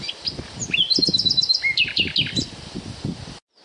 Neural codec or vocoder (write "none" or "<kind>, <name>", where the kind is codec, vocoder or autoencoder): none